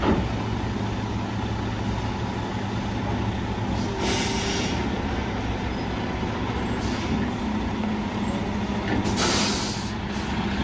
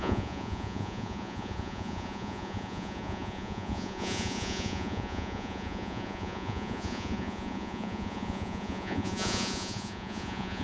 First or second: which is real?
first